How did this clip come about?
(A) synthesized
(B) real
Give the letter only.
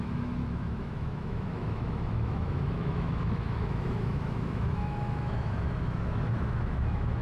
A